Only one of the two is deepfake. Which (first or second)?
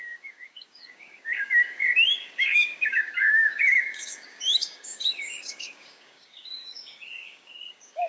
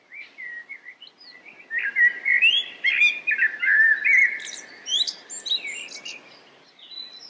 first